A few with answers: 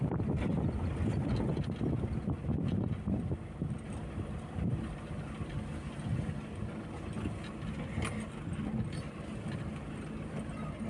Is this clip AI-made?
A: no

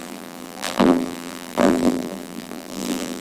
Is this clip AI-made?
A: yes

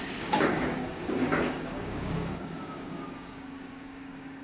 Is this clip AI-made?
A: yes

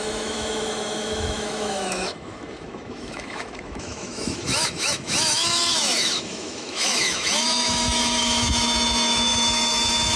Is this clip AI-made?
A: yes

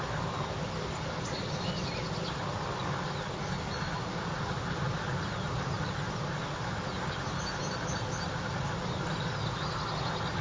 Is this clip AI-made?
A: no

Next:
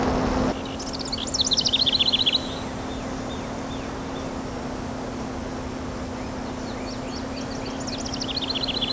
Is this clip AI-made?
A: no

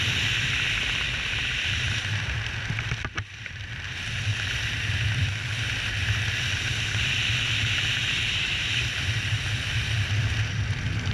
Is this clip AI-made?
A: yes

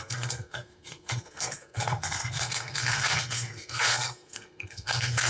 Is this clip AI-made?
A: yes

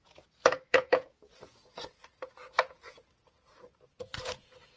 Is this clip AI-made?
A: yes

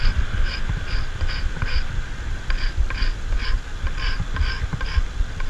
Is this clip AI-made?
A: no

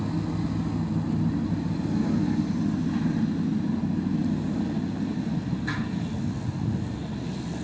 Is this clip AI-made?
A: no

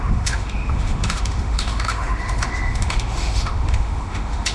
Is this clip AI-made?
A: yes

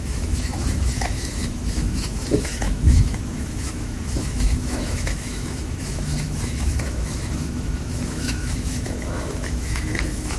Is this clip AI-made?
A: yes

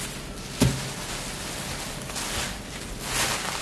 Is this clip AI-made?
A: no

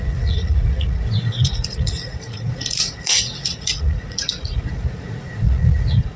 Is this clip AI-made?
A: yes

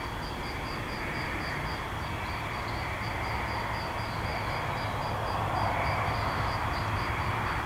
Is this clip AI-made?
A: no